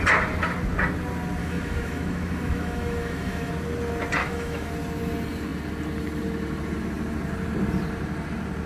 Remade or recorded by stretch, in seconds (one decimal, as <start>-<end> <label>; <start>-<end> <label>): 0.0-1.4 recorded; 1.4-3.5 remade; 3.5-4.2 recorded; 4.2-4.7 remade; 4.7-8.7 recorded

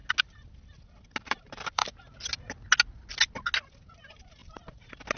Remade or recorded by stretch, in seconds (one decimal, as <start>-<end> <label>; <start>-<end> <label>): 0.0-1.2 recorded; 1.2-1.8 remade; 1.8-3.9 recorded; 3.9-4.4 remade; 4.4-5.2 recorded

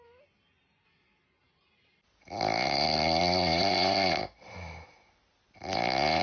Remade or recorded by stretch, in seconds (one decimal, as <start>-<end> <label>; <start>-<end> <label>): 0.0-6.2 recorded

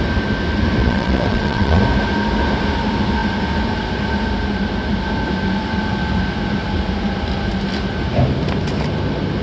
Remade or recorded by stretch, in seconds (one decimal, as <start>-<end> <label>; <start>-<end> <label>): 0.0-0.8 recorded; 0.8-1.8 remade; 1.8-9.4 recorded

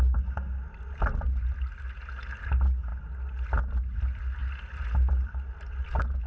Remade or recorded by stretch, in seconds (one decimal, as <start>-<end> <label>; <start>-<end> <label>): 0.0-6.3 recorded

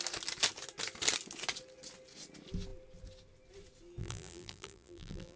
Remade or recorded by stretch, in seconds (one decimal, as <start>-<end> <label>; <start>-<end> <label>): 0.0-4.0 recorded; 4.0-5.4 remade

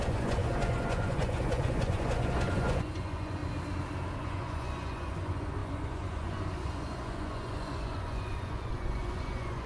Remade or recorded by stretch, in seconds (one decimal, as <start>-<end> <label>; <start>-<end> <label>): 0.0-3.4 remade; 3.4-4.2 recorded; 4.2-9.7 remade